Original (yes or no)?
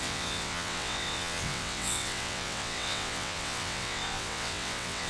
no